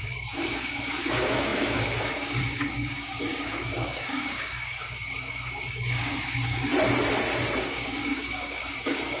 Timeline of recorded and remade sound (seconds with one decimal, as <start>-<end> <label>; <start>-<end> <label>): 0.0-6.6 remade; 6.6-7.6 recorded; 7.6-9.2 remade